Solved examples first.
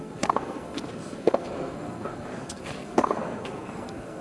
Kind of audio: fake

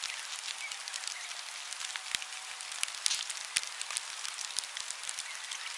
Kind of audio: real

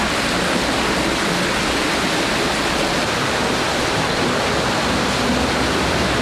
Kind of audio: real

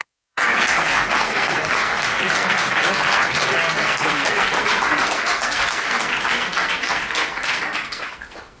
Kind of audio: fake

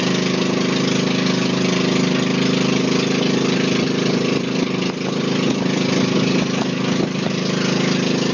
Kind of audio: real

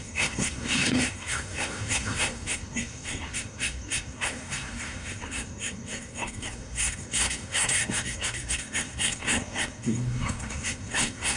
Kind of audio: fake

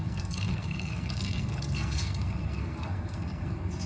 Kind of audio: fake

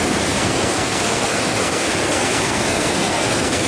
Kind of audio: fake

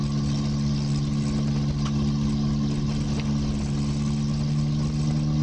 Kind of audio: real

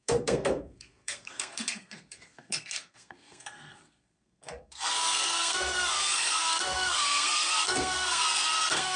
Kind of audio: fake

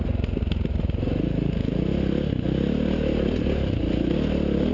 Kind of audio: real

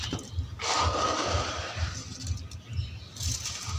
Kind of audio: real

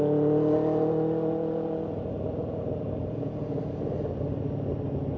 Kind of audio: real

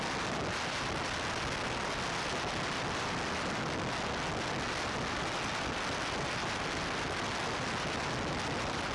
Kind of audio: real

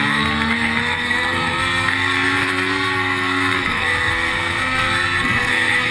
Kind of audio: fake